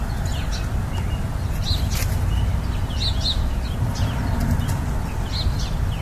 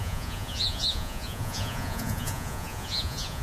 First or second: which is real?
first